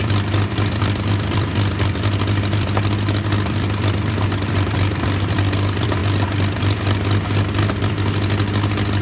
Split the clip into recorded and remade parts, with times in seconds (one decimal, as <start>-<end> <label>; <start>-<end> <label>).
0.0-9.0 remade